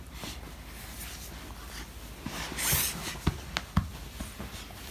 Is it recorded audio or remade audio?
recorded